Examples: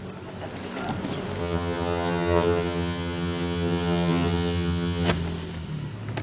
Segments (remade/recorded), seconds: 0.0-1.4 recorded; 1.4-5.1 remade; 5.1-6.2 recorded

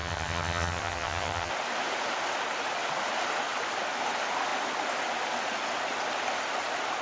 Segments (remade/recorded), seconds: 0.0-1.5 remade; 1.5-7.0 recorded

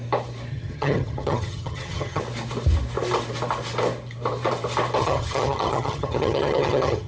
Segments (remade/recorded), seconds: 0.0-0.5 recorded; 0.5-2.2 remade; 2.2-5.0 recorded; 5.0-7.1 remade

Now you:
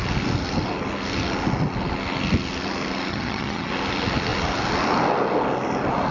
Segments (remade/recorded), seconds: 0.0-3.1 recorded; 3.1-3.7 remade; 3.7-6.1 recorded

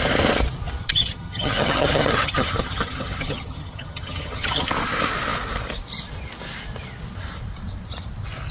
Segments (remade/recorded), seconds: 0.0-0.8 recorded; 0.8-4.7 remade; 4.7-8.5 recorded